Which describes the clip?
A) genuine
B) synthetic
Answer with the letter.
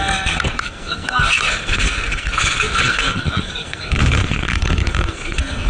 B